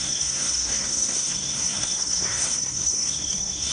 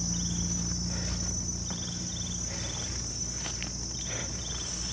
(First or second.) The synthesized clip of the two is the first